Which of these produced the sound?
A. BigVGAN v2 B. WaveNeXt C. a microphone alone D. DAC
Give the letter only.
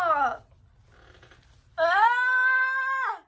C